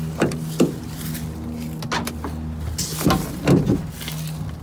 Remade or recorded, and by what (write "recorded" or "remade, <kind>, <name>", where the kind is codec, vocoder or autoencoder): recorded